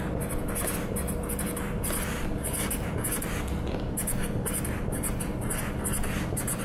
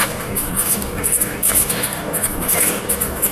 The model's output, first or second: second